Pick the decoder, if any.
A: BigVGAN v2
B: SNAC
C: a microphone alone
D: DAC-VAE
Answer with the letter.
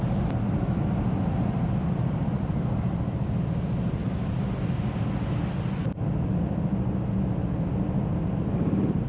C